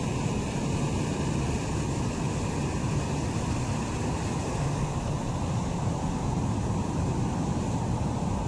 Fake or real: real